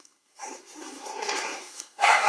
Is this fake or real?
fake